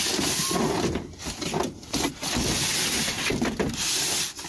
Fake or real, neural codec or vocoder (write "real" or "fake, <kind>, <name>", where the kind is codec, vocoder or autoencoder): real